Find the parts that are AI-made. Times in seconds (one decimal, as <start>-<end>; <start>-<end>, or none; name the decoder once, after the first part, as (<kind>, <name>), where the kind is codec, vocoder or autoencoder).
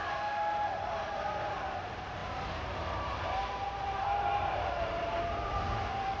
0.0-6.2 (vocoder, BigVGAN v2)